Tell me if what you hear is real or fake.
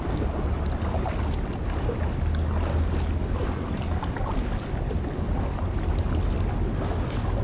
real